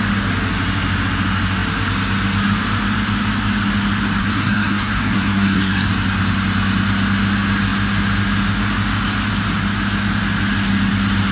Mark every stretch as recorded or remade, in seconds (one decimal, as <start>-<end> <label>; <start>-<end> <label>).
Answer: 0.0-4.2 recorded; 4.2-5.9 remade; 5.9-11.3 recorded